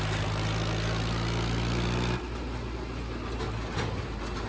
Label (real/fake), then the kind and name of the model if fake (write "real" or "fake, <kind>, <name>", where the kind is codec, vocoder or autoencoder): real